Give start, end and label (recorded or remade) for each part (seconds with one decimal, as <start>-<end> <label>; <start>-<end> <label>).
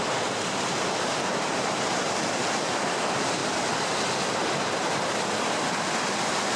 0.0-3.4 remade; 3.4-5.5 recorded; 5.5-6.6 remade